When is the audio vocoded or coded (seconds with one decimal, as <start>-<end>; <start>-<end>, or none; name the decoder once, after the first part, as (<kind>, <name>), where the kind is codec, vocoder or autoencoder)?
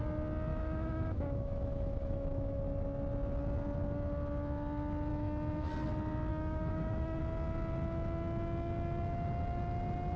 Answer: 0.5-2.6 (autoencoder, DAC-VAE); 5.1-5.7; 6.3-7.2